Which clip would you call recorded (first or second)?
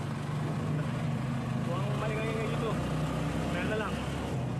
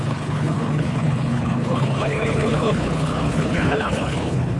first